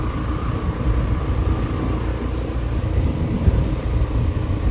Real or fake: real